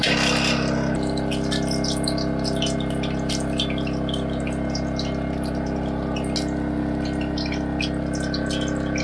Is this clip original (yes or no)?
yes